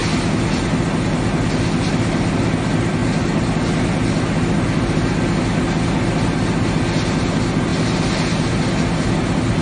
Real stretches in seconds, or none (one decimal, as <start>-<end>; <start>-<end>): 0.0-9.6